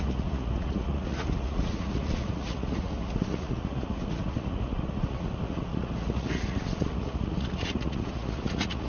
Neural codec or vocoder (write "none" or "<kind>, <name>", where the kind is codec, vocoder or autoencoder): vocoder, Vocos